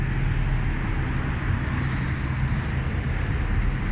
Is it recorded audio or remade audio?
recorded